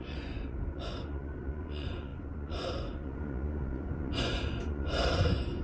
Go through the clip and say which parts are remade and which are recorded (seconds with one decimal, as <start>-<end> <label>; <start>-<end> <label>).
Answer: 0.0-5.6 remade

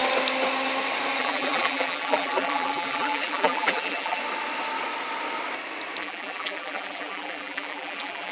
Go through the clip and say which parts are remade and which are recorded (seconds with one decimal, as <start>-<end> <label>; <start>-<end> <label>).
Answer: 0.0-1.2 recorded; 1.2-4.2 remade; 4.2-6.0 recorded; 6.0-8.3 remade